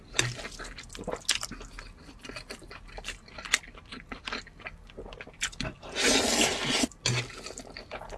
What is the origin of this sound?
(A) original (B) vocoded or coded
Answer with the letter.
A